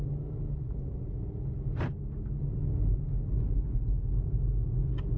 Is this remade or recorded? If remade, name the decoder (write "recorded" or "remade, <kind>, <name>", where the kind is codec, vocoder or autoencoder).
recorded